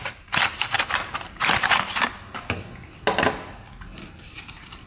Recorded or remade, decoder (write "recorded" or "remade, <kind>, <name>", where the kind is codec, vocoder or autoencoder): recorded